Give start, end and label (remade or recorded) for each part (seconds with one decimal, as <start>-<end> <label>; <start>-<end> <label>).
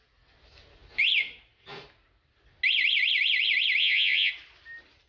0.0-3.8 recorded; 3.8-4.3 remade; 4.3-5.1 recorded